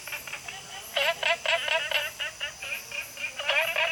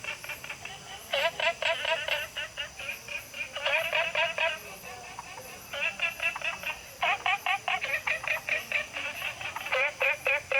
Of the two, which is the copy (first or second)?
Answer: second